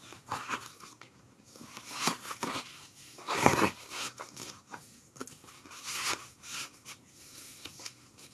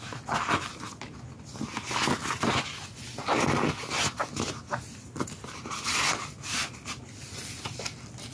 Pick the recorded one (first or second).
second